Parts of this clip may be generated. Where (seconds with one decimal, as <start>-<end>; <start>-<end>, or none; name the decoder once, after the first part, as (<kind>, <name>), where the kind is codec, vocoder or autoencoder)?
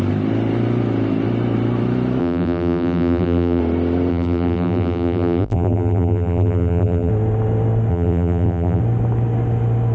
2.2-3.6 (vocoder, BigVGAN v2); 4.1-7.1; 7.9-8.8